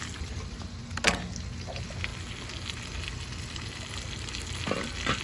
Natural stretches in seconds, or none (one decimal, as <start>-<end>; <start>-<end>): 0.0-5.2